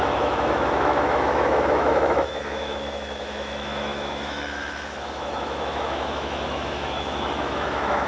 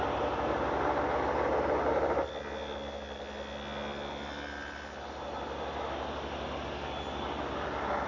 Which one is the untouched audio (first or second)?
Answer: second